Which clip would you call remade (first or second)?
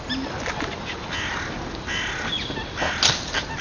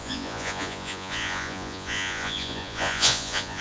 second